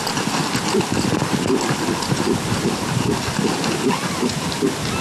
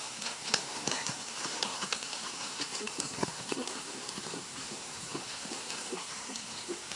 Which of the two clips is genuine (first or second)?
first